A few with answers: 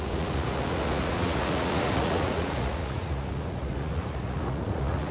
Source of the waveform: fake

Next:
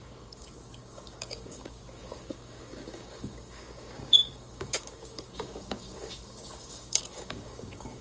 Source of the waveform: fake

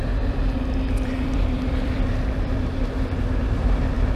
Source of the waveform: fake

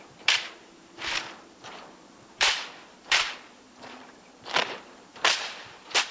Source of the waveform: fake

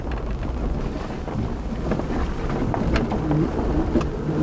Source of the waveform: fake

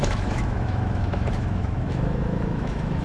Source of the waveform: fake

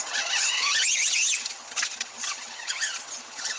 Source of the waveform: fake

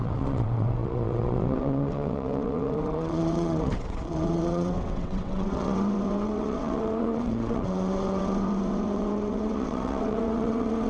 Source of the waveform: fake